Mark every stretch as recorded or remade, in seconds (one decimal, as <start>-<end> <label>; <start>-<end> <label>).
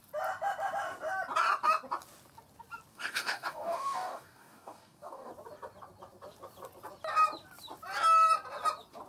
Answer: 0.0-2.9 recorded; 2.9-5.3 remade; 5.3-9.1 recorded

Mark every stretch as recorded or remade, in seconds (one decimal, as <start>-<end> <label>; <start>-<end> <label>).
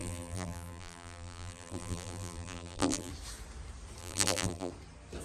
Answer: 0.0-3.1 remade; 3.1-4.0 recorded; 4.0-4.7 remade; 4.7-5.2 recorded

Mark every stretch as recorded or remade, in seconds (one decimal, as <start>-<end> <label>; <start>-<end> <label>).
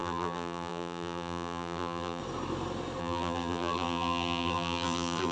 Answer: 0.0-2.2 remade; 2.2-3.0 recorded; 3.0-5.3 remade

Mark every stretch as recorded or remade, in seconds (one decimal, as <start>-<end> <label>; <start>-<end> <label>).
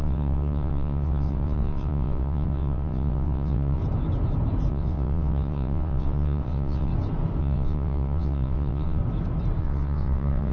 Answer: 0.0-3.8 remade; 3.8-4.7 recorded; 4.7-6.9 remade; 6.9-7.4 recorded; 7.4-9.0 remade; 9.0-9.6 recorded; 9.6-10.5 remade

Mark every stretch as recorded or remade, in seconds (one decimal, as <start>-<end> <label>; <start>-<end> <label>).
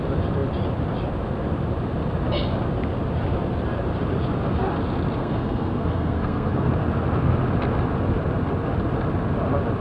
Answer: 0.0-5.2 recorded; 5.2-6.7 remade; 6.7-9.8 recorded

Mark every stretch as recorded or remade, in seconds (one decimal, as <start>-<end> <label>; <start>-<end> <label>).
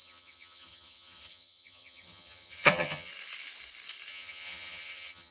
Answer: 0.0-3.1 remade; 3.1-4.1 recorded; 4.1-5.3 remade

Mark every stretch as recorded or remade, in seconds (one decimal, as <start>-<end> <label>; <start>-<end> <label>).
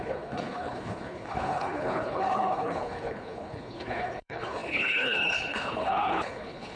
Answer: 0.0-6.8 remade